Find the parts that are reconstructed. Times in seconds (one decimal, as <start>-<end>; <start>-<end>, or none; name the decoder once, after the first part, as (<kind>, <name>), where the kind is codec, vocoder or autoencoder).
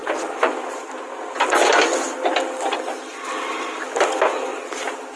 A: 0.0-0.9 (vocoder, BigVGAN v2); 4.5-5.2